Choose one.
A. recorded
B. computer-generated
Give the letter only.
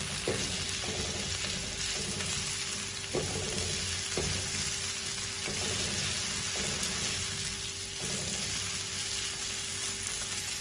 A